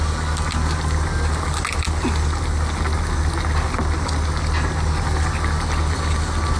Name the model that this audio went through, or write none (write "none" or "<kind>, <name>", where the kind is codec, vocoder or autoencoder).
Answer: none